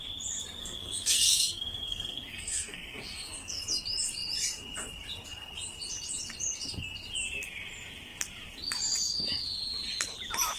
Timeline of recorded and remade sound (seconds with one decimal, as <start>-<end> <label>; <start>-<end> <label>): 0.0-0.6 recorded; 0.6-3.6 remade; 3.6-10.6 recorded